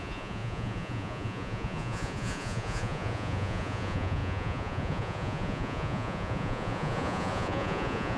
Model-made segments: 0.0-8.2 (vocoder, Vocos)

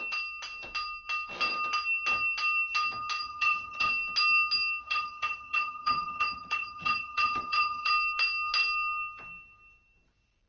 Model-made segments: 3.2-3.9 (vocoder, HiFi-GAN); 4.8-7.9

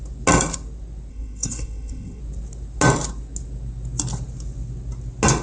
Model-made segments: 1.1-2.2 (codec, SNAC)

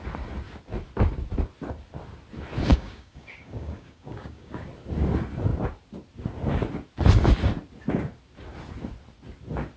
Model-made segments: 2.7-4.7 (codec, DAC)

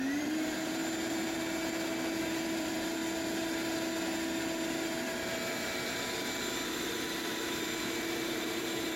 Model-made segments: 0.0-0.8 (vocoder, BigVGAN v2); 2.2-3.0; 7.8-9.0

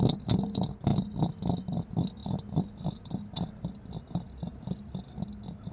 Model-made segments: none

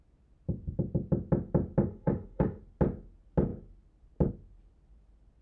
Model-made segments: 1.8-2.6 (autoencoder, DAC-VAE)

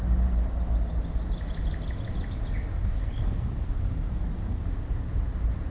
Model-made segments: 2.8-4.8 (codec, SNAC)